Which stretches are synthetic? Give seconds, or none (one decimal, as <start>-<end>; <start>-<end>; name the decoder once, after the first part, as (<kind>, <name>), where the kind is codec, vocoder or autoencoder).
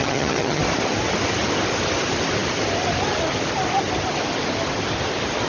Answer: 0.0-0.6 (vocoder, HiFi-GAN)